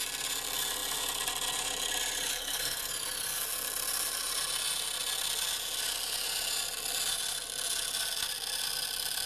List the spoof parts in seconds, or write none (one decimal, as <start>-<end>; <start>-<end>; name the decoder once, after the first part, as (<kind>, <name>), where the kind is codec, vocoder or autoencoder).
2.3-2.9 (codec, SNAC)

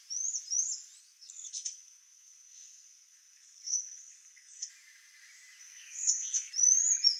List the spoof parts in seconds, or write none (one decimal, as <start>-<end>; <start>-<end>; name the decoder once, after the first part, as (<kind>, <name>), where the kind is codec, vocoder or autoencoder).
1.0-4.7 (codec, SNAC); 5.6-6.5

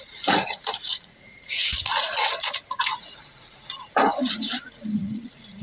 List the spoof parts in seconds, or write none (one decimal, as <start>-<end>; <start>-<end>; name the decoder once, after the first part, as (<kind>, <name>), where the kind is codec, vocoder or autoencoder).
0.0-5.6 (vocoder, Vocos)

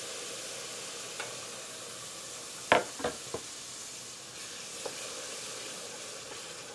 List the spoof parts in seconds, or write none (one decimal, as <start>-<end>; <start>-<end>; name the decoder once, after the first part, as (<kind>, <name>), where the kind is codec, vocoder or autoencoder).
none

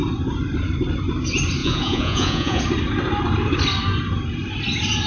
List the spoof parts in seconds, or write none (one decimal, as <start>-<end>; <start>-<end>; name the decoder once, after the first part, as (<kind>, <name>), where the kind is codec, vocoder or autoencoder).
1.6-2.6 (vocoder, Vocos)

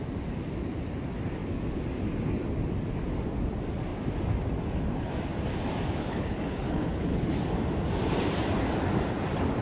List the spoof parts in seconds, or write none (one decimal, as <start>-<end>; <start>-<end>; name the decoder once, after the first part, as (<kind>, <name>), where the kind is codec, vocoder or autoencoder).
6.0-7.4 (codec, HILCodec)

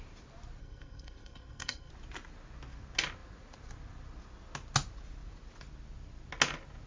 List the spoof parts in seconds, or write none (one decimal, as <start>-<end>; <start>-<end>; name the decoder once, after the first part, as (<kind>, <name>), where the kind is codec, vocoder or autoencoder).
0.6-1.9 (codec, SNAC)